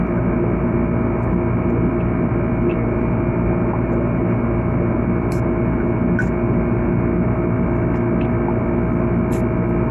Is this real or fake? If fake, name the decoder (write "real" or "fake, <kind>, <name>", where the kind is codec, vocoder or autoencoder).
real